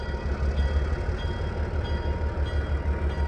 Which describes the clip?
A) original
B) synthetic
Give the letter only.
A